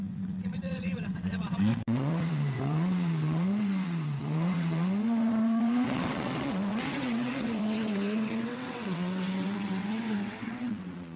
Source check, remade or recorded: remade